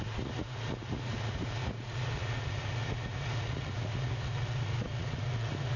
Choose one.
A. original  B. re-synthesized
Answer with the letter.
B